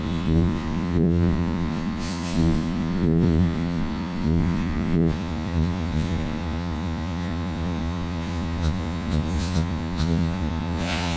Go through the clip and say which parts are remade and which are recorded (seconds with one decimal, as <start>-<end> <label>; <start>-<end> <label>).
0.0-11.2 remade